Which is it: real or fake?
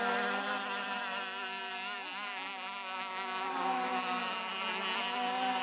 real